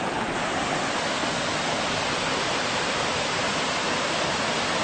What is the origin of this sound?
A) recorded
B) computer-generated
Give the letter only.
A